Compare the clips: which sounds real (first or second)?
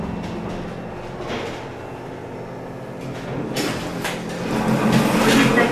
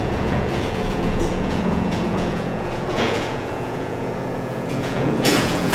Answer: first